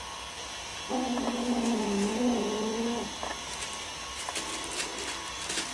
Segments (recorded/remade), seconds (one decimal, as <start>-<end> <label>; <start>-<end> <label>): 0.0-1.4 recorded; 1.4-2.1 remade; 2.1-5.7 recorded